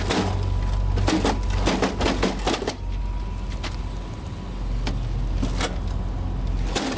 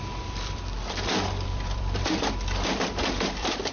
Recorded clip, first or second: first